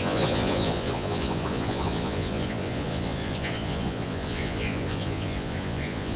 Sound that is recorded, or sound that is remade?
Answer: remade